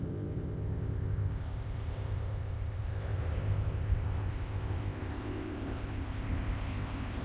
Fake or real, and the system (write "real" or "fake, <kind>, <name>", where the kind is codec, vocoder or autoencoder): fake, codec, ZipCodec